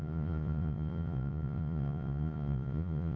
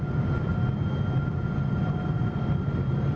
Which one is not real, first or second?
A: first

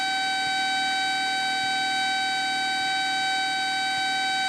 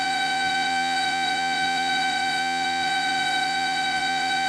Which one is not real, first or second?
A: second